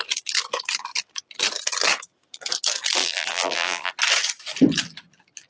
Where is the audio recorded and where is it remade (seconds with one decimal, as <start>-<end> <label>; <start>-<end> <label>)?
0.0-3.0 recorded; 3.0-3.9 remade; 3.9-5.5 recorded